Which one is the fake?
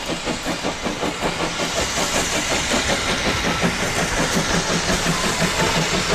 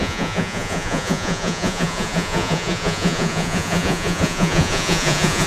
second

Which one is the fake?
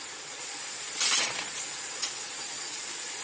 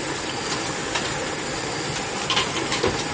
first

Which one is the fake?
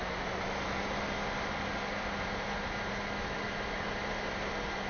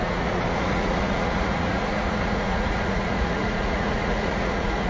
second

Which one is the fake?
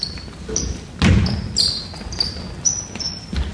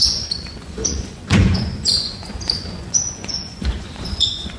second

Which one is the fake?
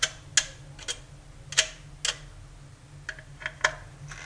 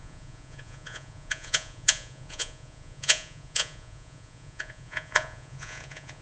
second